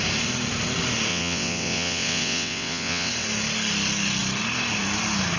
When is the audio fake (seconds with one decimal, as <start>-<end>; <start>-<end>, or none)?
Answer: 1.1-3.1